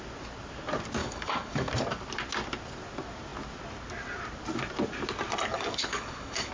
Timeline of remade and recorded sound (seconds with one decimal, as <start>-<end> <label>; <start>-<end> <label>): 0.0-1.0 recorded; 1.0-1.7 remade; 1.7-5.5 recorded; 5.5-6.5 remade